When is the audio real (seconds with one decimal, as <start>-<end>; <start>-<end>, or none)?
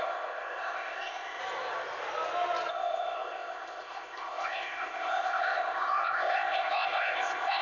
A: 1.4-2.7